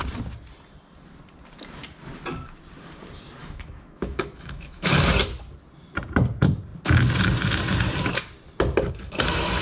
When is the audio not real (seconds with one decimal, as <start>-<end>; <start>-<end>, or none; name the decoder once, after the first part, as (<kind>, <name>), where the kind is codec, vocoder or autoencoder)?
3.4-4.9 (autoencoder, DAC-VAE)